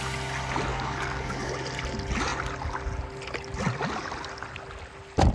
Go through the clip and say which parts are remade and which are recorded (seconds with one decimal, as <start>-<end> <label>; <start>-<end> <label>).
0.0-0.7 recorded; 0.7-1.5 remade; 1.5-5.3 recorded